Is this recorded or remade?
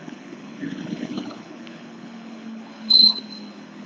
remade